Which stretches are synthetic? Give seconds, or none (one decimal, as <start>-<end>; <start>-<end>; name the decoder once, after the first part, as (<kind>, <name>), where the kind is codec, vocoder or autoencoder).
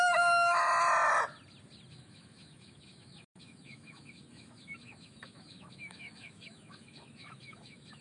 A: 0.0-0.7 (autoencoder, DAC-VAE); 1.9-8.0